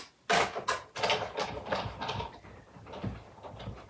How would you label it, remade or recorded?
recorded